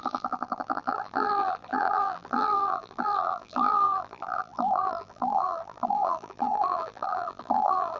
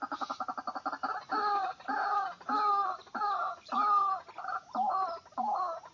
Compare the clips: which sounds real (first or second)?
second